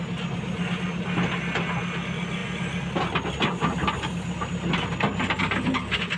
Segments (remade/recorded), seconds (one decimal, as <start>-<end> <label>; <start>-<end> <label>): 0.0-6.2 recorded